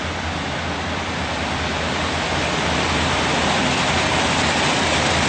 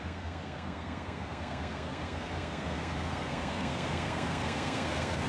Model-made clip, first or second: second